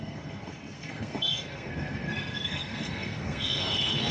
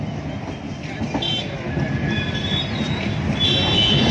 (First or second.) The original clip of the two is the second